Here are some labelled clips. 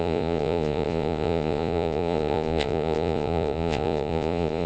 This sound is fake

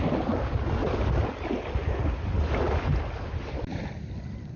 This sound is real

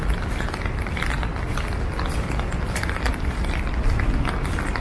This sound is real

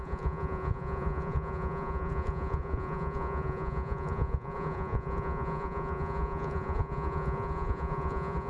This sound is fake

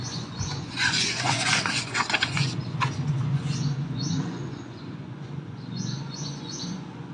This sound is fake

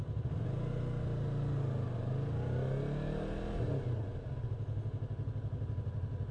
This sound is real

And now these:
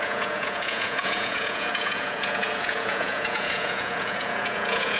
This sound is fake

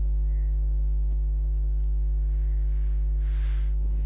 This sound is real